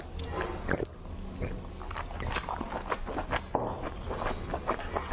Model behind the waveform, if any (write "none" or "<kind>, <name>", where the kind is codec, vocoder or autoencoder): none